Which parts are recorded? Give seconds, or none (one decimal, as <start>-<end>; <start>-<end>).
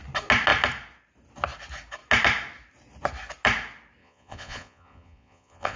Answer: 0.0-4.0